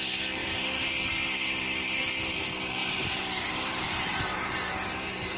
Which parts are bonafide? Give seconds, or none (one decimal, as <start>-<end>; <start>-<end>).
0.0-0.4; 0.9-2.8